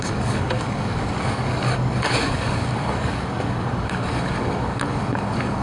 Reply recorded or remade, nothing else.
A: remade